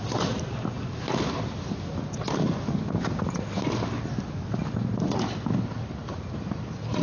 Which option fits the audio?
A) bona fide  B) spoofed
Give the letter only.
A